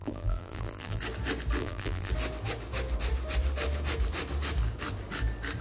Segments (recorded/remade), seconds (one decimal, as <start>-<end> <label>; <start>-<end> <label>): 0.0-1.0 remade; 1.0-1.6 recorded; 1.6-2.1 remade; 2.1-5.6 recorded